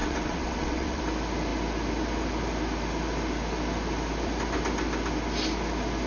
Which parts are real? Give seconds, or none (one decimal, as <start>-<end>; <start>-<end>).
1.0-6.1